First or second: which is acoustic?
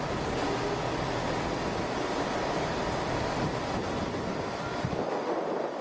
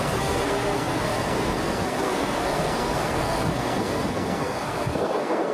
first